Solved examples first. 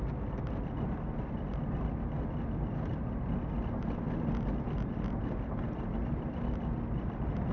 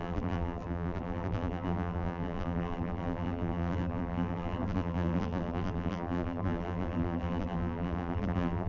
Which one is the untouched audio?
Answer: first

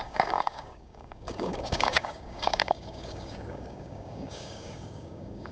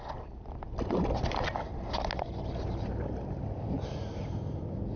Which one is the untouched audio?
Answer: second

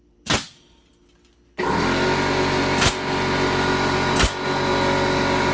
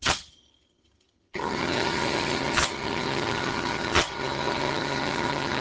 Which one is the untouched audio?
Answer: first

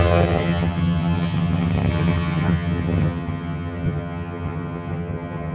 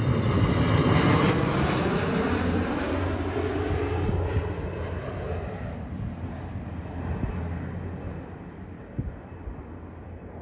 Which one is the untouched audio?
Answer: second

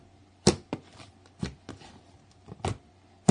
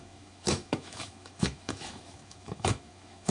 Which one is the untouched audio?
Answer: first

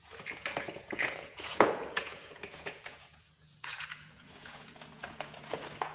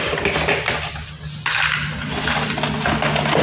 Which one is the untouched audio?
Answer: second